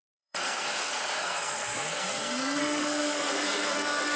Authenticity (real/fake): fake